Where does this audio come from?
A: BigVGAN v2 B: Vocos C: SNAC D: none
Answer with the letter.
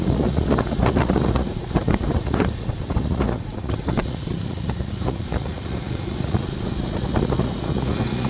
B